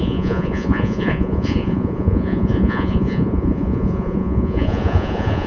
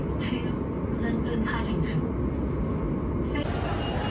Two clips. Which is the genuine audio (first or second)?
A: second